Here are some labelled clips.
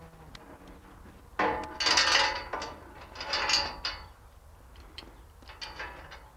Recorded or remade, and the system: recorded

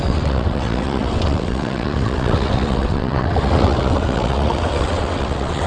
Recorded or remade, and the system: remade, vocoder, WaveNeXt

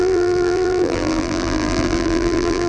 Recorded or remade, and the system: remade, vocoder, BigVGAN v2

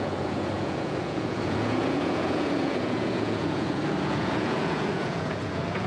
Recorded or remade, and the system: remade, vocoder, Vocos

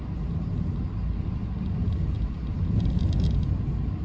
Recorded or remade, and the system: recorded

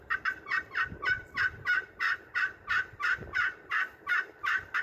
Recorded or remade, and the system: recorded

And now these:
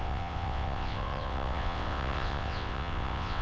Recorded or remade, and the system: remade, vocoder, WaveNeXt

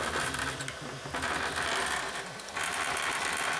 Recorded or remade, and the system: recorded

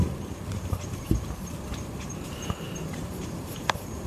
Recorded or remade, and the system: remade, vocoder, BigVGAN v2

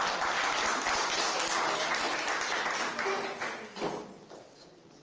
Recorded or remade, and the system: recorded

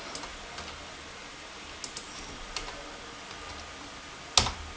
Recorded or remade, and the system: recorded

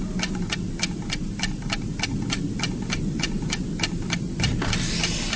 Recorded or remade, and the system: recorded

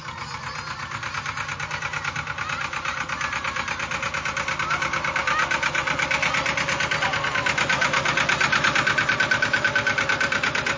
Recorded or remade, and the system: recorded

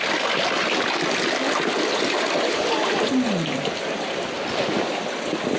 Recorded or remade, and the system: recorded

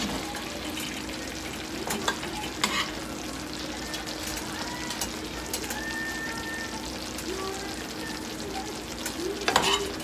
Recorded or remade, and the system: recorded